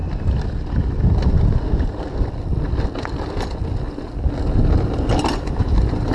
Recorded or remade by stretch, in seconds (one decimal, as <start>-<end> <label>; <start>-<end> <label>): 0.0-6.1 recorded